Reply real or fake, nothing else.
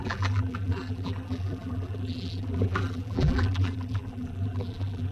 fake